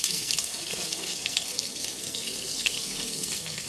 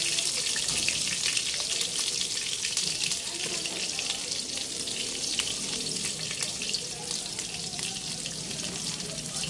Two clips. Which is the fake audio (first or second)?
first